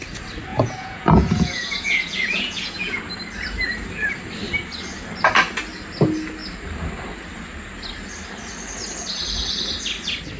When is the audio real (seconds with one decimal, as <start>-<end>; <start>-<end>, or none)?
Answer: 0.0-0.5; 3.0-10.4